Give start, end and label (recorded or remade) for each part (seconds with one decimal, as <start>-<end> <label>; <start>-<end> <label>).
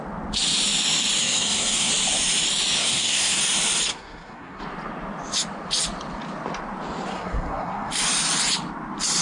0.0-1.2 recorded; 1.2-1.9 remade; 1.9-2.8 recorded; 2.8-3.4 remade; 3.4-3.9 recorded; 3.9-4.6 remade; 4.6-7.1 recorded; 7.1-7.9 remade; 7.9-9.2 recorded